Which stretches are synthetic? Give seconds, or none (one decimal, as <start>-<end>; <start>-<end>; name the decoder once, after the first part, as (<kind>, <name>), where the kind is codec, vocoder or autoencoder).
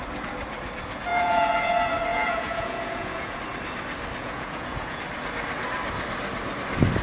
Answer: 1.1-1.7 (vocoder, Vocos); 2.1-3.4; 4.2-5.0